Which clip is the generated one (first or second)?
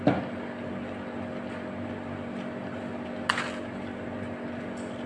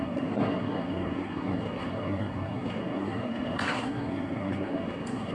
second